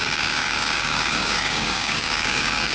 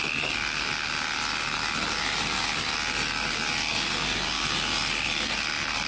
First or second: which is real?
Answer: second